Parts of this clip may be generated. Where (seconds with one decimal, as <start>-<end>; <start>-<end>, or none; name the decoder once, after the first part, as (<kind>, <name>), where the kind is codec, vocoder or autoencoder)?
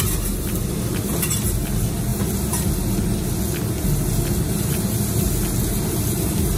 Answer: none